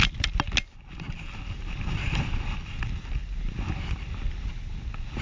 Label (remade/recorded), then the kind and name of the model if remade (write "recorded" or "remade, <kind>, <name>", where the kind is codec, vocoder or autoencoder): recorded